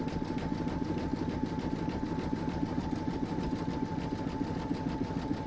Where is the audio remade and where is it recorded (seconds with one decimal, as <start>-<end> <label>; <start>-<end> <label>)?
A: 0.0-5.5 recorded